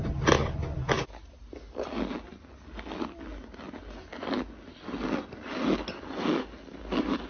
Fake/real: real